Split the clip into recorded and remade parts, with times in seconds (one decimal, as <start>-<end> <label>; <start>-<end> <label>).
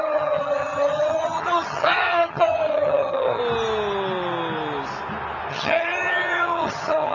0.0-3.4 remade; 3.4-5.5 recorded; 5.5-7.1 remade